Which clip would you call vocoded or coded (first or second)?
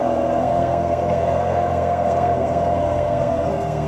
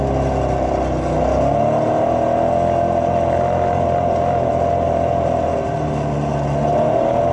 first